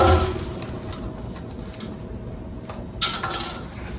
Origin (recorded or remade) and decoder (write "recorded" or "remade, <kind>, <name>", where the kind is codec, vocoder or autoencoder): recorded